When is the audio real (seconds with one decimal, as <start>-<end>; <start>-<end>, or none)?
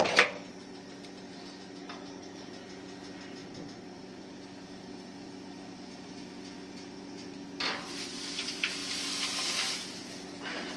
0.0-1.8; 2.5-10.8